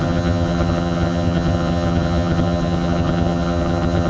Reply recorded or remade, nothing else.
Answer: remade